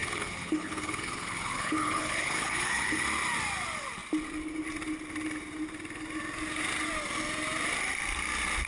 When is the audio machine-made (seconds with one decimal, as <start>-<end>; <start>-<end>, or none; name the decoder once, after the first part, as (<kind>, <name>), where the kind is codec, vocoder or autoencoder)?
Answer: 0.0-3.0 (codec, HILCodec)

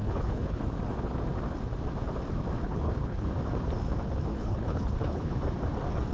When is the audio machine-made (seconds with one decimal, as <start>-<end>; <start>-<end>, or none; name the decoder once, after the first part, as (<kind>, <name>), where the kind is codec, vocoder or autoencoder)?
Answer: 0.0-0.6 (codec, HILCodec); 2.6-3.3; 4.3-5.3

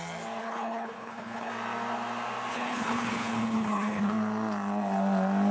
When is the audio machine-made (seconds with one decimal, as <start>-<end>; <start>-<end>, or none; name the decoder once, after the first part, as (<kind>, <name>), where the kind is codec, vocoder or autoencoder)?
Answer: 0.4-1.5 (codec, HILCodec); 2.5-4.0

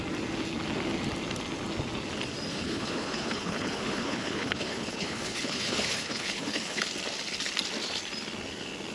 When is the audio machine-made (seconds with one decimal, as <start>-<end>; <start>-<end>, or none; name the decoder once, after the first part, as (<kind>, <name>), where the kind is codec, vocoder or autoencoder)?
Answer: 2.5-6.8 (codec, HILCodec)